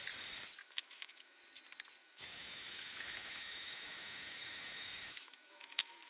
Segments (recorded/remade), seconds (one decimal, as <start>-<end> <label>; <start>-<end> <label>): 0.0-0.6 recorded; 0.6-1.4 remade; 1.4-2.0 recorded; 2.0-6.1 remade

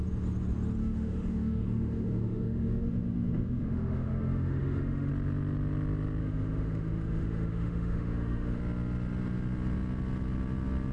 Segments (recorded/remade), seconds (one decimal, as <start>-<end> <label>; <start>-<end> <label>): 0.0-0.8 recorded; 0.8-5.1 remade; 5.1-6.2 recorded; 6.2-8.6 remade; 8.6-10.9 recorded

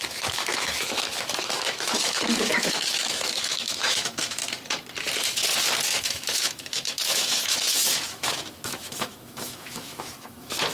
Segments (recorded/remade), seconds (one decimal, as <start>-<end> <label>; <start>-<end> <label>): 0.0-4.4 remade; 4.4-6.0 recorded; 6.0-10.7 remade

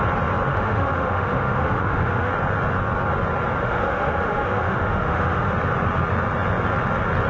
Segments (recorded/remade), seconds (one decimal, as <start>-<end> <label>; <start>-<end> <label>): 0.0-0.5 recorded; 0.5-2.3 remade; 2.3-3.6 recorded; 3.6-5.5 remade; 5.5-7.3 recorded

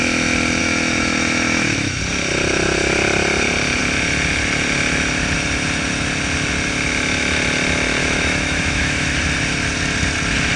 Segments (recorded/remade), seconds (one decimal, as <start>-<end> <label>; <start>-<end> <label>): 0.0-0.6 recorded; 0.6-2.0 remade; 2.0-8.0 recorded; 8.0-9.2 remade; 9.2-10.6 recorded

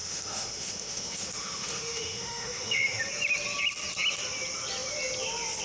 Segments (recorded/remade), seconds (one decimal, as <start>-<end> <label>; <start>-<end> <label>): 0.0-3.0 remade; 3.0-5.6 recorded